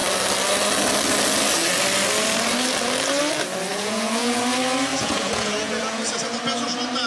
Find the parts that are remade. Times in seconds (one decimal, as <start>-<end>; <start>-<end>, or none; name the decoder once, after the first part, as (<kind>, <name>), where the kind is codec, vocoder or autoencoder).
3.7-4.4 (vocoder, Vocos); 4.9-6.2